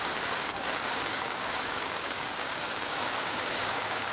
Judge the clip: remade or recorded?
remade